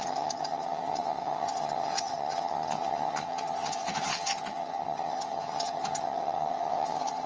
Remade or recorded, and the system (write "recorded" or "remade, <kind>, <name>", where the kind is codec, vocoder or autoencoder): remade, vocoder, HiFi-GAN